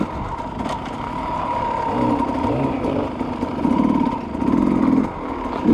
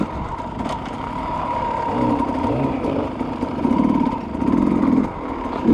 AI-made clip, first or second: second